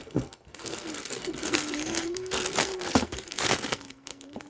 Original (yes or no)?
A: no